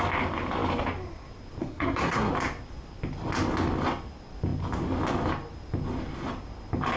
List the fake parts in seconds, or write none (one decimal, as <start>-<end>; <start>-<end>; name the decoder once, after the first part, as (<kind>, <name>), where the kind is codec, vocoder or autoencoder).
1.6-2.3 (codec, SNAC)